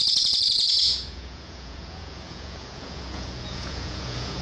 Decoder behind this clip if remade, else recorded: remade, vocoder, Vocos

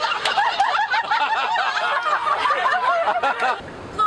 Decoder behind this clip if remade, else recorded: recorded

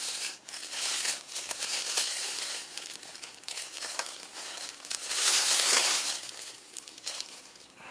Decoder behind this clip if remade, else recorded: remade, codec, SNAC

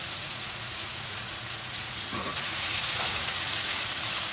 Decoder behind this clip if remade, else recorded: remade, vocoder, Vocos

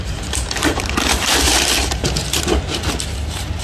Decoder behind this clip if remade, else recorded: remade, vocoder, BigVGAN v2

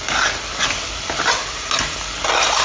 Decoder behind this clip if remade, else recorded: recorded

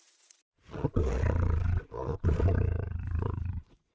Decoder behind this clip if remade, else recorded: remade, vocoder, Vocos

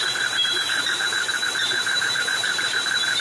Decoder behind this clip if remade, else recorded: remade, vocoder, BigVGAN v2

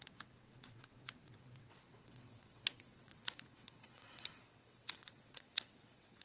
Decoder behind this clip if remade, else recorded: remade, vocoder, WaveNeXt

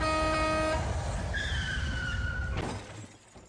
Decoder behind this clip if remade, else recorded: recorded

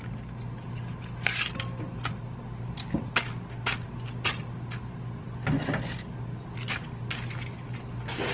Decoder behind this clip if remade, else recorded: recorded